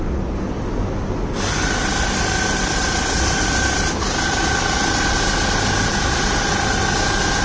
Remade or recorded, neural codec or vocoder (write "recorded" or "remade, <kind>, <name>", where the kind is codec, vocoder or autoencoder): recorded